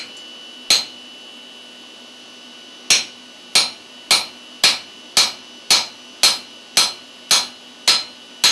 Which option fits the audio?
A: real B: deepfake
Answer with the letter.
A